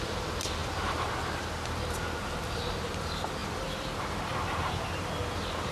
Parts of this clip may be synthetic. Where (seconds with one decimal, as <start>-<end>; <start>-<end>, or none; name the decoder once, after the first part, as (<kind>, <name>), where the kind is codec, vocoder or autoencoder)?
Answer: none